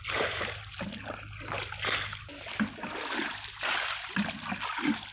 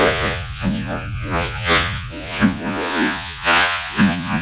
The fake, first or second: second